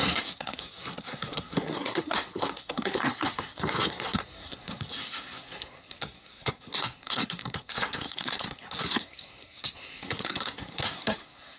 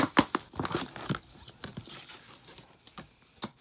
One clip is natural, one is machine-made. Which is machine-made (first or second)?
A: first